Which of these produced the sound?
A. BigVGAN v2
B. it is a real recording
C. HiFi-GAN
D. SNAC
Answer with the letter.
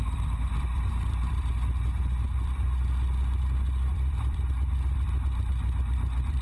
A